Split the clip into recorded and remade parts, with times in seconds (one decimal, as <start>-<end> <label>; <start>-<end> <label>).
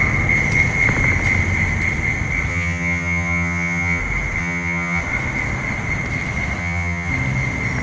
0.0-2.5 recorded; 2.5-4.0 remade; 4.0-4.4 recorded; 4.4-5.0 remade; 5.0-6.6 recorded; 6.6-7.1 remade; 7.1-7.8 recorded